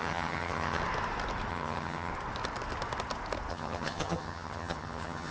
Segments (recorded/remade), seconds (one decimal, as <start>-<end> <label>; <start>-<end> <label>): 0.0-0.8 remade; 0.8-1.5 recorded; 1.5-2.1 remade; 2.1-3.5 recorded; 3.5-5.3 remade